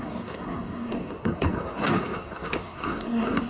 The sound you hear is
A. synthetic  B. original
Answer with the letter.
A